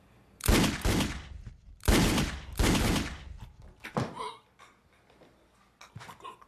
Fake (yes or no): no